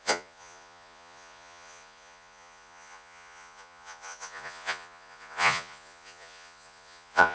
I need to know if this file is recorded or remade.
remade